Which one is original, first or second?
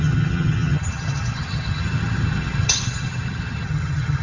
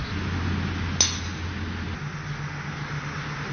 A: second